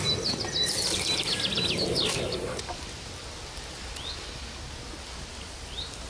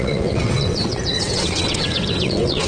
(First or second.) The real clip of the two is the first